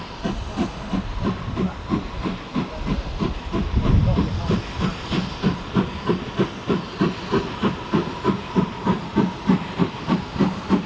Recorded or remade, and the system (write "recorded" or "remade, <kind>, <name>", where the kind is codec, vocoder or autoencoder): recorded